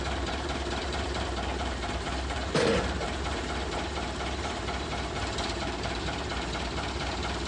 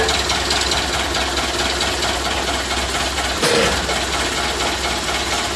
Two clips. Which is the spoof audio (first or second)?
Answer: first